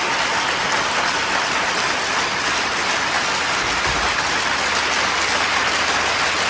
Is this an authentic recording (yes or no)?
yes